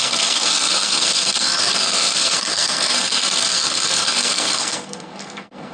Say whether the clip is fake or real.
fake